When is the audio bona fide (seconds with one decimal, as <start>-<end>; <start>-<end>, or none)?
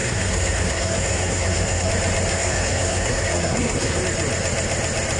1.9-2.3; 4.0-5.2